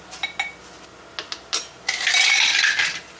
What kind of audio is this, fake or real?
real